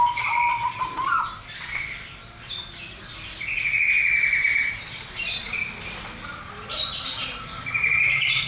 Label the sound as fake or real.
real